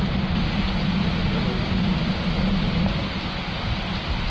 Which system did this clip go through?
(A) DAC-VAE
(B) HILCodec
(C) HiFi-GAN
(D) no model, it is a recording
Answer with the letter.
D